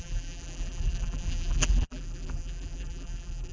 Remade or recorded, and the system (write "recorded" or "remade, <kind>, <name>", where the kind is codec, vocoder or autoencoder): remade, vocoder, BigVGAN v2